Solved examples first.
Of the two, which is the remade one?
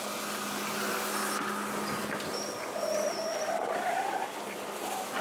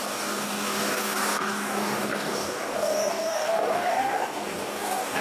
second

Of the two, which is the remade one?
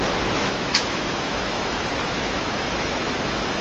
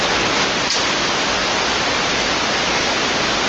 first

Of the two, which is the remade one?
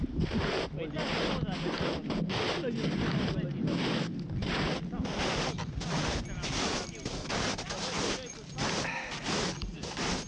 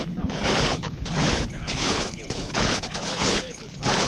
second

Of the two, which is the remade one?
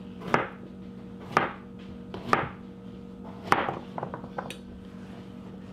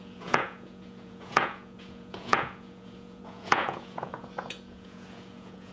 second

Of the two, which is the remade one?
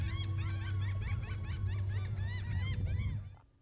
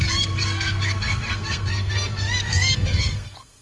second